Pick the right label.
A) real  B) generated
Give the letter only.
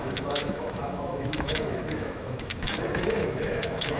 B